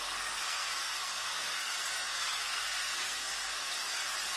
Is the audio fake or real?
fake